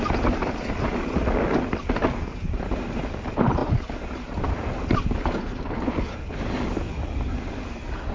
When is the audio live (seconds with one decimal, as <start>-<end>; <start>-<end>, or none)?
0.0-8.1